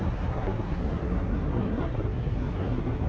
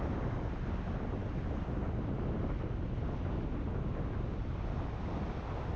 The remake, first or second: first